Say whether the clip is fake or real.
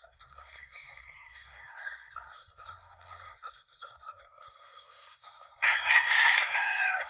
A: fake